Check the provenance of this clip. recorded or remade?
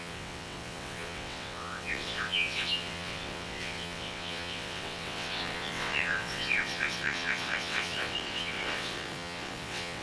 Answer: remade